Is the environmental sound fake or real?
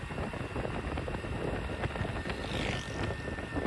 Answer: real